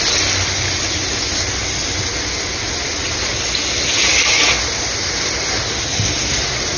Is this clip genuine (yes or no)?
yes